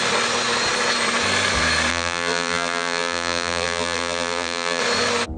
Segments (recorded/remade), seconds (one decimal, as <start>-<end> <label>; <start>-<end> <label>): 0.0-1.9 recorded; 1.9-4.8 remade; 4.8-5.4 recorded